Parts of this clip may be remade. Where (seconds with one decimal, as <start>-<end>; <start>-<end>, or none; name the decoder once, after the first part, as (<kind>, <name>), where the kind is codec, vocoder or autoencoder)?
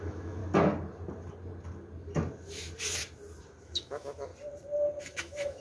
0.0-0.4 (autoencoder, DAC-VAE); 3.6-4.3; 5.0-5.6